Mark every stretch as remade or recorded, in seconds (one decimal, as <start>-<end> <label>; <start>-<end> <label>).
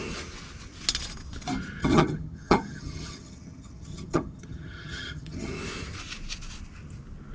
0.0-1.8 recorded; 1.8-5.5 remade; 5.5-7.3 recorded